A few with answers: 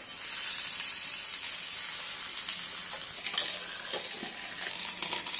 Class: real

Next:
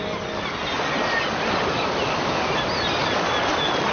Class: real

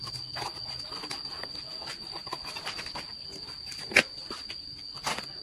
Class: real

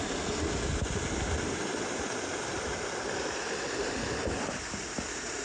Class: real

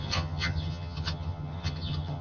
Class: fake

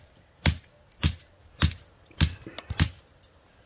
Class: real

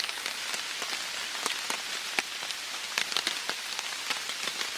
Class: real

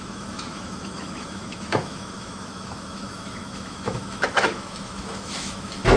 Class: fake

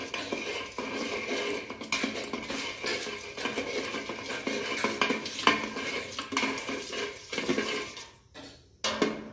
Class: real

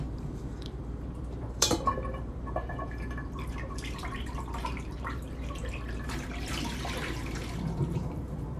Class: fake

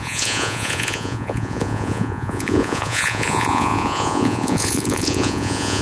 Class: fake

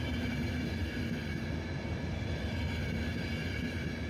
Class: real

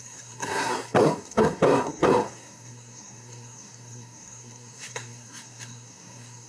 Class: fake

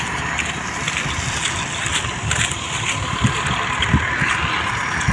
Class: real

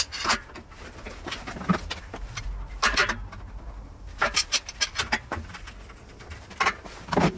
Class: real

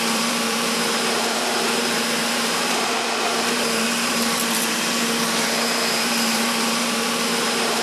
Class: fake